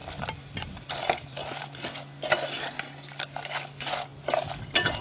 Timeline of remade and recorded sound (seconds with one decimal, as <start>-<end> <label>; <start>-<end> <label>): 0.0-1.9 remade; 1.9-5.0 recorded